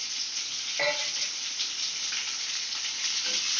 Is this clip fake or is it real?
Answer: real